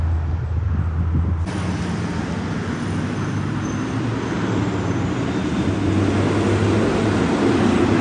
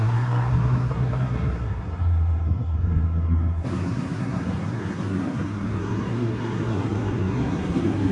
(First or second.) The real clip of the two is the first